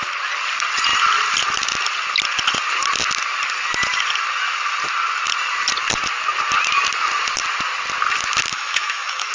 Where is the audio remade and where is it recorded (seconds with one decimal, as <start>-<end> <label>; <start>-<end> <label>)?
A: 0.0-8.5 recorded; 8.5-9.3 remade